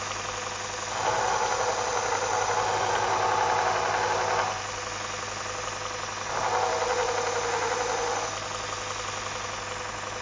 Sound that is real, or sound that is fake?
real